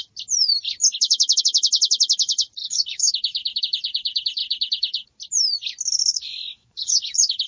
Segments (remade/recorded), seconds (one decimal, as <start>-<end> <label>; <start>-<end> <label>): 0.0-2.6 recorded; 2.6-3.6 remade; 3.6-6.1 recorded; 6.1-7.5 remade